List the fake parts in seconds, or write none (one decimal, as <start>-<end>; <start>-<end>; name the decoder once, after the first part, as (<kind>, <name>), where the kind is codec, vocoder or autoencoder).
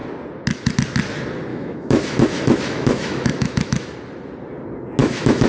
1.5-3.9 (autoencoder, DAC-VAE); 5.0-5.5